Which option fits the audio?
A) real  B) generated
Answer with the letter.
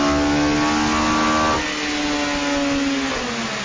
A